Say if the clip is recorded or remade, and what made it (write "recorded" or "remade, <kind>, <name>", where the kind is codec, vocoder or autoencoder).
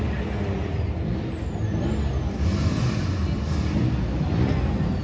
recorded